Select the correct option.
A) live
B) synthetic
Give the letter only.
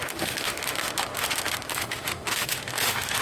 B